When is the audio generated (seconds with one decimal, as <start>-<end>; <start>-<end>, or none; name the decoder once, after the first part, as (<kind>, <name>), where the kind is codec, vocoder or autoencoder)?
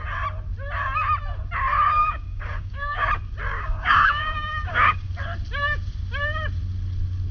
2.0-3.1 (codec, DAC); 3.5-5.1